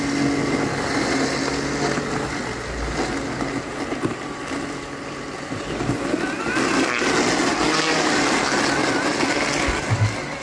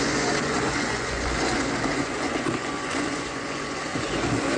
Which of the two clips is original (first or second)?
first